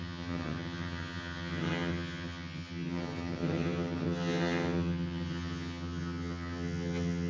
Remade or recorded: remade